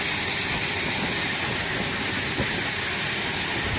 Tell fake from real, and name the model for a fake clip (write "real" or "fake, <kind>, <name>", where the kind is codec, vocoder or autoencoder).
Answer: real